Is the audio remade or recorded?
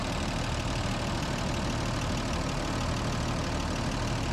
recorded